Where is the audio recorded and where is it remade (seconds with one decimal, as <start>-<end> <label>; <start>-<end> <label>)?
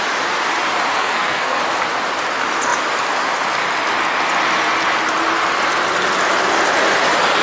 0.0-1.0 recorded; 1.0-1.6 remade; 1.6-7.4 recorded